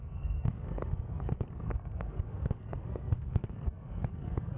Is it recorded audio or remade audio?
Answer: remade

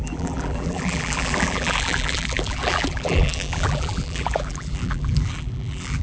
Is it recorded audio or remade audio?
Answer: remade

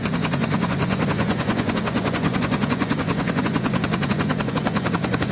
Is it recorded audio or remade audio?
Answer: remade